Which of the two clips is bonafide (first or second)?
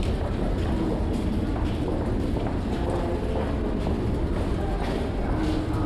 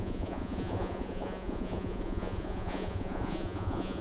first